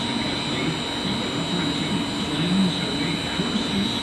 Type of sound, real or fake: real